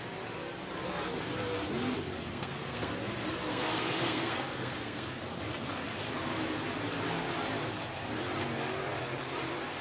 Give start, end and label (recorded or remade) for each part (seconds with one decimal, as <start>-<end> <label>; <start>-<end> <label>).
0.0-2.3 recorded; 2.3-2.9 remade; 2.9-3.5 recorded; 3.5-5.2 remade; 5.2-9.8 recorded